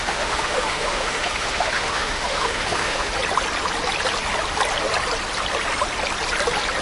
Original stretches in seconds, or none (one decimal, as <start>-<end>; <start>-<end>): 3.1-6.8